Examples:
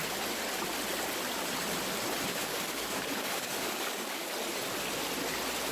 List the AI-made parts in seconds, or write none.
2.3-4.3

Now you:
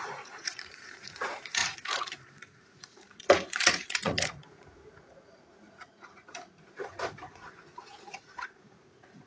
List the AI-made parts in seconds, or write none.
0.0-9.3

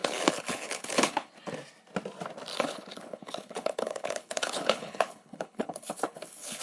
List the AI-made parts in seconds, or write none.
0.0-1.3; 2.5-6.6